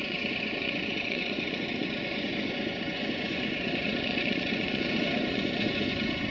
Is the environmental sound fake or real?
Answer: fake